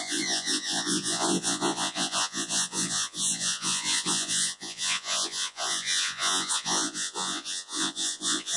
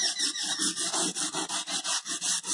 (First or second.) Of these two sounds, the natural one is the second